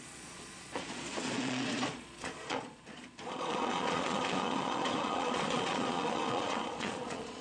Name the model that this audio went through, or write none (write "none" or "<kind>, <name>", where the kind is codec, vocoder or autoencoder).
vocoder, Vocos